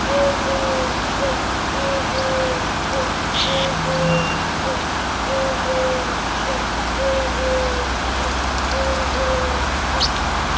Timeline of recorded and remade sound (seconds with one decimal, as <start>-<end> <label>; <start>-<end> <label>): 0.0-8.9 recorded; 8.9-9.4 remade; 9.4-10.6 recorded